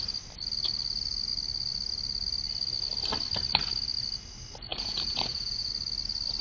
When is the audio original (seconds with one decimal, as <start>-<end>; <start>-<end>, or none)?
0.0-4.7; 5.7-6.4